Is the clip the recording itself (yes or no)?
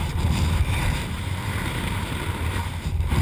no